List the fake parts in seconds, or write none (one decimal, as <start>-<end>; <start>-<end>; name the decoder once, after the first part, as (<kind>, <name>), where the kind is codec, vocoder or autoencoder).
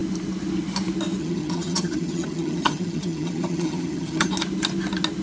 1.2-4.3 (vocoder, HiFi-GAN)